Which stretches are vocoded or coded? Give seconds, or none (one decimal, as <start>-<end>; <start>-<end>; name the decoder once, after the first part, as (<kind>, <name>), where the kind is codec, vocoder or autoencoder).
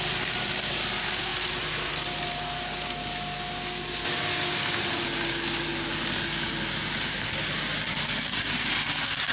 none